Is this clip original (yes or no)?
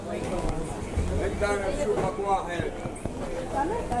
yes